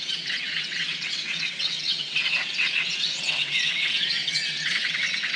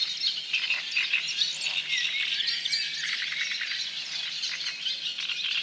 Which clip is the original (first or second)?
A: second